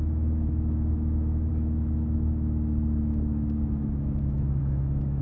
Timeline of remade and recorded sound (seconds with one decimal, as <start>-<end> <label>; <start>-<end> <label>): 0.0-5.2 remade